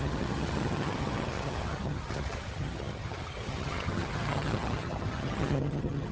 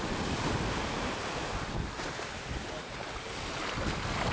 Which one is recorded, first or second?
second